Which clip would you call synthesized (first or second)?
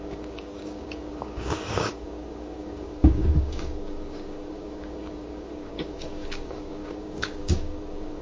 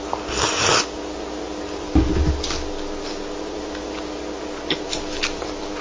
first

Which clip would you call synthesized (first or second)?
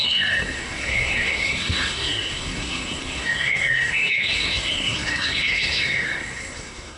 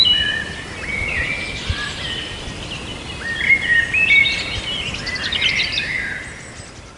first